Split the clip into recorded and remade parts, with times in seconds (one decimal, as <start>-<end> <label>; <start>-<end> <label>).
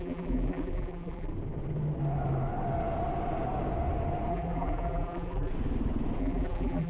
0.0-1.3 remade; 1.3-4.3 recorded; 4.3-5.5 remade; 5.5-6.2 recorded; 6.2-6.9 remade